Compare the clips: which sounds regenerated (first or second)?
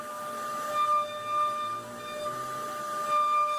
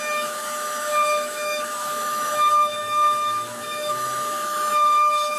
second